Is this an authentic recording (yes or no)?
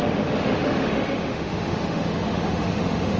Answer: no